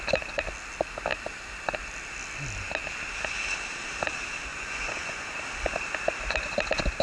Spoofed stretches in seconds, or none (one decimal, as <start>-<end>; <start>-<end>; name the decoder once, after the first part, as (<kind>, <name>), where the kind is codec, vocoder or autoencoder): 4.5-5.3 (vocoder, Vocos)